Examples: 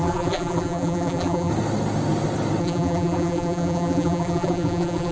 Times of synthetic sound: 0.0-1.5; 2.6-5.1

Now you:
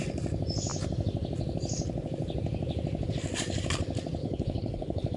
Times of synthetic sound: 4.2-5.2

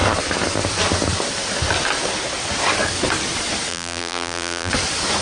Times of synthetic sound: 3.7-4.7

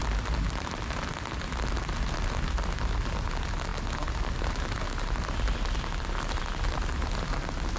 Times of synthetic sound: none

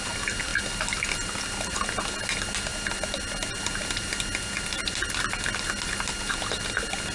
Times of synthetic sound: none

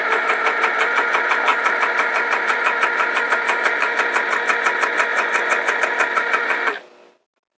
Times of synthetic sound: 5.1-5.8

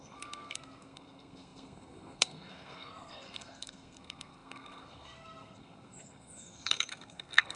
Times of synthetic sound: 0.0-7.6